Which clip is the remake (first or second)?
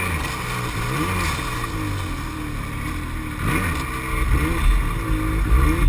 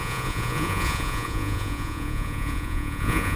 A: second